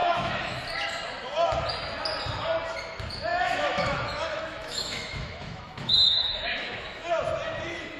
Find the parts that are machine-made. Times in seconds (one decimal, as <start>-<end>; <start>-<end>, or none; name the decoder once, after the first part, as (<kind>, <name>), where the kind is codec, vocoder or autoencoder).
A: 0.0-0.6 (autoencoder, DAC-VAE); 3.3-7.1